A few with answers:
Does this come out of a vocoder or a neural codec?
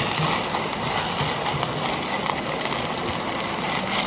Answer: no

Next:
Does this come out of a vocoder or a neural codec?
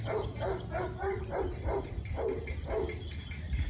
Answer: no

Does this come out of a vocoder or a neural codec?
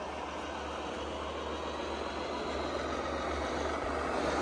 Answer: no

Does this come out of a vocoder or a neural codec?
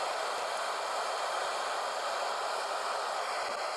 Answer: no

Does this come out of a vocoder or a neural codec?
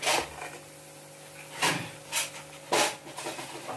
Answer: no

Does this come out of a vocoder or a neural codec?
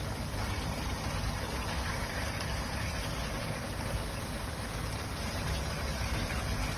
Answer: yes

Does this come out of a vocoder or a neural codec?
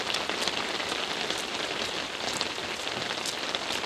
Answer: no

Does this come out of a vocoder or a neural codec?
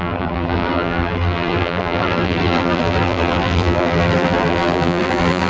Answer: yes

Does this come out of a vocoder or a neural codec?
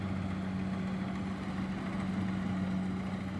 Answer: no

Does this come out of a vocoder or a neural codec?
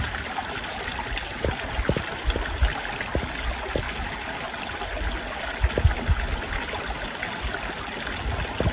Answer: no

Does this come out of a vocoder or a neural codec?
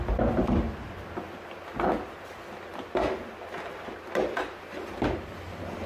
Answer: no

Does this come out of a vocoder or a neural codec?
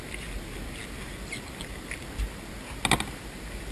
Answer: no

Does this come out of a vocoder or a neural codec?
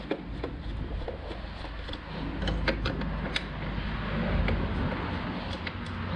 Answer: no